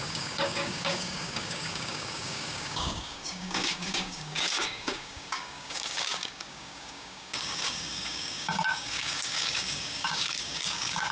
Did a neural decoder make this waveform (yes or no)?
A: yes